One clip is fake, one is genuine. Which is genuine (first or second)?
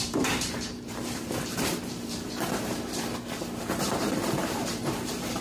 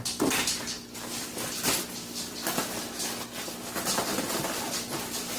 second